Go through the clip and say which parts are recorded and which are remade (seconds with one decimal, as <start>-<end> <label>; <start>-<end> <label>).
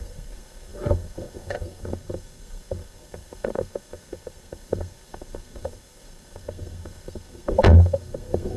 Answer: 0.0-8.6 remade